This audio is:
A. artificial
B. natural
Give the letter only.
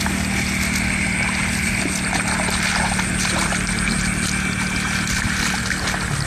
B